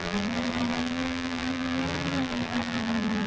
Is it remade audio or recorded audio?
remade